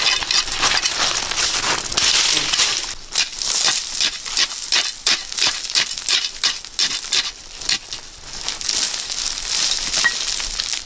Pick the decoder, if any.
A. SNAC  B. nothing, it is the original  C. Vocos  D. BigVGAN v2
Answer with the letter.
B